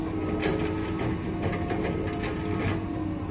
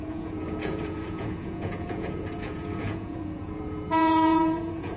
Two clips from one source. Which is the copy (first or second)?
second